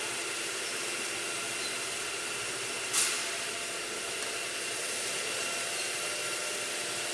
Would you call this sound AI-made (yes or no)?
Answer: no